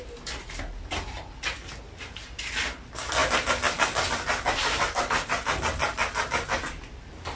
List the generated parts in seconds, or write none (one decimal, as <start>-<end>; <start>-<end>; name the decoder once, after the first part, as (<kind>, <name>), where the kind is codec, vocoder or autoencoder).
none